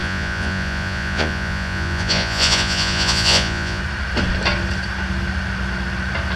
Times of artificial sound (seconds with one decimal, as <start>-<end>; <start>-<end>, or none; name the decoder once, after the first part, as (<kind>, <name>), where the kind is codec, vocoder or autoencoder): 0.0-3.8 (vocoder, Vocos)